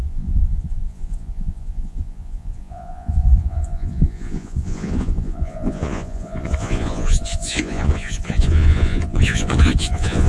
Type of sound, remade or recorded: remade